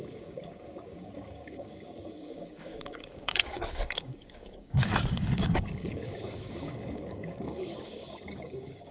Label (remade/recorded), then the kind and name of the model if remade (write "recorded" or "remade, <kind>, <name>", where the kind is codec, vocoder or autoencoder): remade, codec, DAC